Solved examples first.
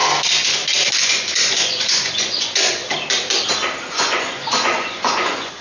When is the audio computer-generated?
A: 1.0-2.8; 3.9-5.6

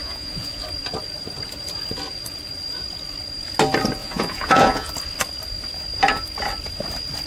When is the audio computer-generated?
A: 0.0-0.6; 4.0-4.9

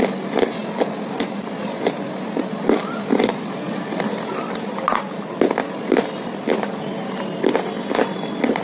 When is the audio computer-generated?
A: none